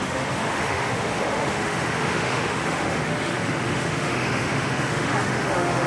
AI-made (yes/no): yes